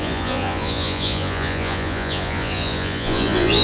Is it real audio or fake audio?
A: fake